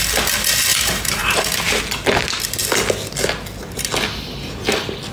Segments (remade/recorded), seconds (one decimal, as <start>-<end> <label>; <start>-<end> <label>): 0.0-0.7 recorded; 0.7-1.8 remade; 1.8-5.1 recorded